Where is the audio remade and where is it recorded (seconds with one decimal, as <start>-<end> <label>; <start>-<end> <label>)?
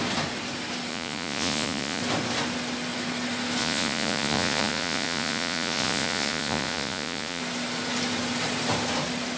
0.0-0.9 recorded; 0.9-2.0 remade; 2.0-3.6 recorded; 3.6-7.4 remade; 7.4-9.4 recorded